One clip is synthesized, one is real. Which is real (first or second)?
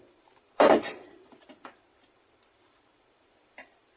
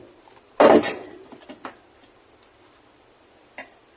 second